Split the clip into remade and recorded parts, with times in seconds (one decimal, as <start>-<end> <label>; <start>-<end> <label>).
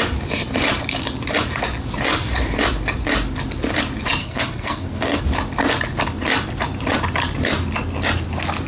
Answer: 0.0-4.2 recorded; 4.2-5.2 remade; 5.2-8.7 recorded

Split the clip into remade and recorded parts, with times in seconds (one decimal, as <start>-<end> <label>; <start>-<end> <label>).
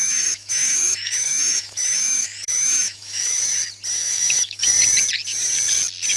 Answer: 0.0-3.4 remade; 3.4-4.0 recorded; 4.0-4.6 remade; 4.6-6.2 recorded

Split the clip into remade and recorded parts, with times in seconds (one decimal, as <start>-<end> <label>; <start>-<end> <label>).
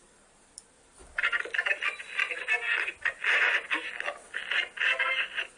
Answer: 0.0-2.9 remade; 2.9-5.6 recorded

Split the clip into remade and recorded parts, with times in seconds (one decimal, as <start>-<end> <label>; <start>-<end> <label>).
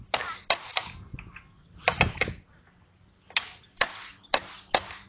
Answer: 0.0-5.1 recorded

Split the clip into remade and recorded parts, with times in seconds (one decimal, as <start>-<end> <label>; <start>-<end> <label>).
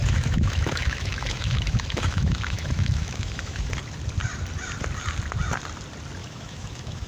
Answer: 0.0-3.7 remade; 3.7-6.2 recorded; 6.2-7.1 remade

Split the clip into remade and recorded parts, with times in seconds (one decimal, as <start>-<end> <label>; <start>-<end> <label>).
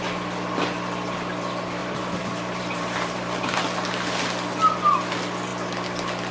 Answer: 0.0-1.8 recorded; 1.8-3.6 remade; 3.6-6.3 recorded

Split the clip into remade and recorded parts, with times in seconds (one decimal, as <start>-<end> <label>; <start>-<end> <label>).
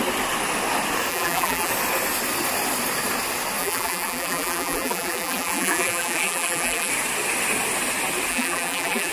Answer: 0.0-1.1 recorded; 1.1-1.7 remade; 1.7-3.6 recorded; 3.6-6.9 remade; 6.9-8.3 recorded; 8.3-9.1 remade